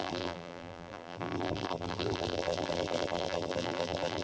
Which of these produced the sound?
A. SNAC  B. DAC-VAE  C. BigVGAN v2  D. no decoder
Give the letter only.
C